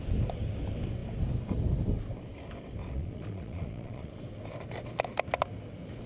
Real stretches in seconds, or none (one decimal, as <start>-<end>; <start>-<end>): 0.0-2.8; 4.1-6.1